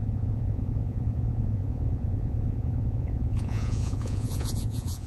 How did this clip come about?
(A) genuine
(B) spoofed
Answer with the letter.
B